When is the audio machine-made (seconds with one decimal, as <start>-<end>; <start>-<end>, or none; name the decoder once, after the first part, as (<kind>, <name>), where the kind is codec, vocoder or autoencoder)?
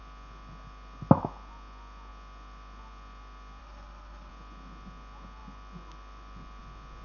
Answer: 3.6-4.3 (codec, HILCodec)